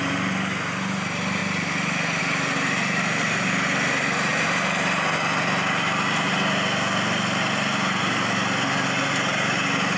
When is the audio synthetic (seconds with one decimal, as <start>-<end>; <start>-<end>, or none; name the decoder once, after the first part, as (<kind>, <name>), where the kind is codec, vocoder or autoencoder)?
9.3-10.0 (vocoder, BigVGAN v2)